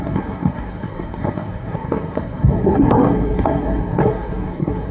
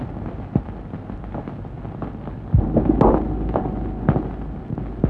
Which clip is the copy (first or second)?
first